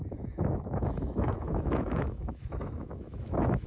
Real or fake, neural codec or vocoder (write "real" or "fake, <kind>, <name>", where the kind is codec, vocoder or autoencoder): fake, autoencoder, DAC-VAE